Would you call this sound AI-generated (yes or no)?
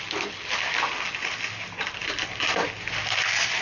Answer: no